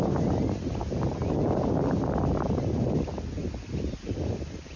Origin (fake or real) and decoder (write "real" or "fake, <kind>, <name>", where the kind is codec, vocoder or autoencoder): real